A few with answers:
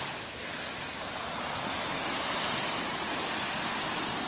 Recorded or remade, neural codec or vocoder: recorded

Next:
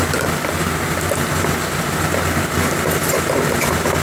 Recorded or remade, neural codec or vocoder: recorded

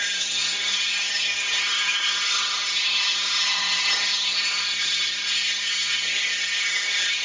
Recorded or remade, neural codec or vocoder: remade, codec, SNAC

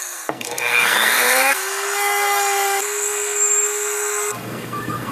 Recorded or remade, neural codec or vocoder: remade, codec, SNAC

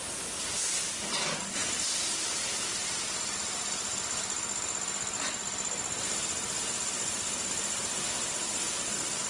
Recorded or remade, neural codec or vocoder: recorded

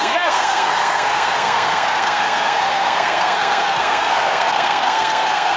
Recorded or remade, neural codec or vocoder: remade, codec, SNAC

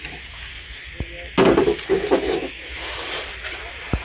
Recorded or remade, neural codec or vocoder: recorded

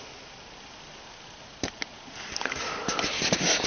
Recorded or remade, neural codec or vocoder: recorded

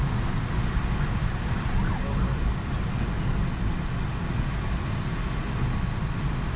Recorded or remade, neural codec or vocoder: recorded